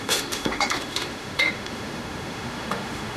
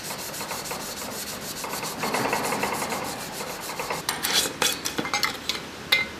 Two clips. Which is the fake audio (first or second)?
first